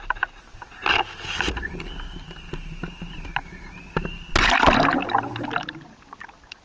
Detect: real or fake real